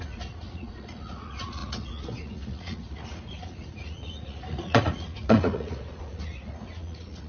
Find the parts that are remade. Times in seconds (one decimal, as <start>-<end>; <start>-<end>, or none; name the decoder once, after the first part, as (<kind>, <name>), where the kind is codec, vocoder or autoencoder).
0.0-7.3 (vocoder, Vocos)